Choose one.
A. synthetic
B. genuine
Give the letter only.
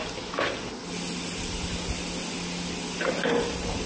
B